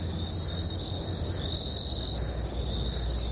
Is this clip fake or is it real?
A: real